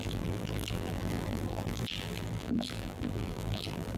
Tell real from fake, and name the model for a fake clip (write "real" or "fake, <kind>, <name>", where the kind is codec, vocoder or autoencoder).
fake, vocoder, BigVGAN v2